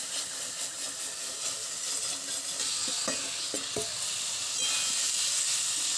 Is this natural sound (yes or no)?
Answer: yes